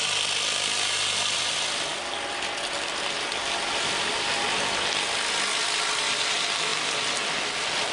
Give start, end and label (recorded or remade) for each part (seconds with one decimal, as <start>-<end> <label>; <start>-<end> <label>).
0.0-7.9 recorded